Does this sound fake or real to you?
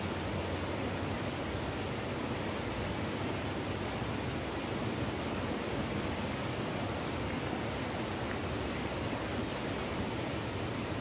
real